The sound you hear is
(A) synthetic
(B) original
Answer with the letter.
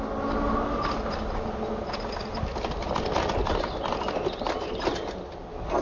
B